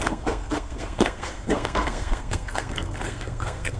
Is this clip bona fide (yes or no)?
no